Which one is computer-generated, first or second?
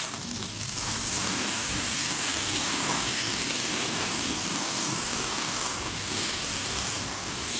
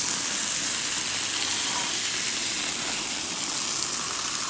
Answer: first